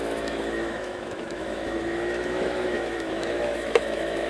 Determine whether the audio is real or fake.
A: fake